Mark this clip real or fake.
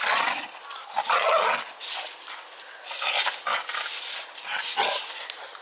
real